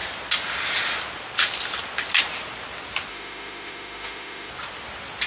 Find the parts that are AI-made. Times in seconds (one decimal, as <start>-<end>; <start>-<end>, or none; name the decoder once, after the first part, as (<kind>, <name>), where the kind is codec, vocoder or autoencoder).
3.1-4.5 (autoencoder, DAC-VAE)